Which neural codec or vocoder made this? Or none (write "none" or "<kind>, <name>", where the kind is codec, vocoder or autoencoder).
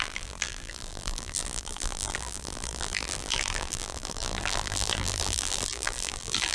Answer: vocoder, BigVGAN v2